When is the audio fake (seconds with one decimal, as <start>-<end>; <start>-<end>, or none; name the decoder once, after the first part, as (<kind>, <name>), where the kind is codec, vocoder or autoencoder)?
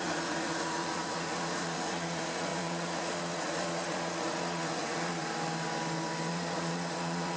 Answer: 0.0-5.2 (vocoder, Vocos); 6.3-7.4